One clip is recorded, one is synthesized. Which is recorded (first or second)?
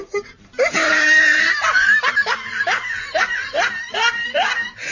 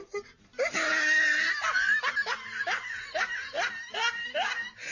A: second